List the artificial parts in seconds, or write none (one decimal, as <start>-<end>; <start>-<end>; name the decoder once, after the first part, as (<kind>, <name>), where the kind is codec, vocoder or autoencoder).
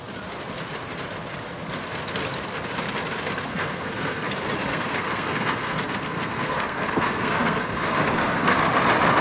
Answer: 3.5-4.3 (codec, SNAC); 4.7-8.6